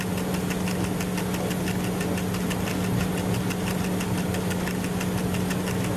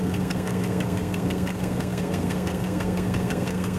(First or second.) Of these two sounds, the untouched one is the first